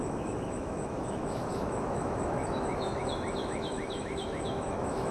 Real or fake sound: fake